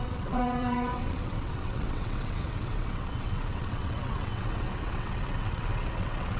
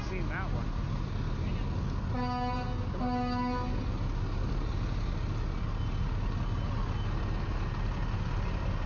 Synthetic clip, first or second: first